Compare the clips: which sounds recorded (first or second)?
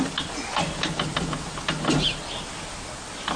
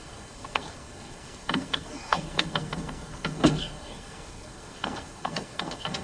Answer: first